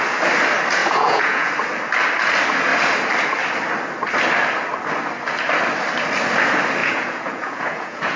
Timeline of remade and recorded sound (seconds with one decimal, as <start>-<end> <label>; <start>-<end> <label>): 0.0-0.8 recorded; 0.8-1.5 remade; 1.5-6.8 recorded; 6.8-8.2 remade